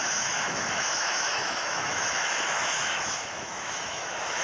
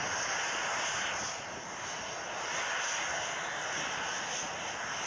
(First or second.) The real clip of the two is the second